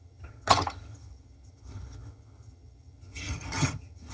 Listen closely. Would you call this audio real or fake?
fake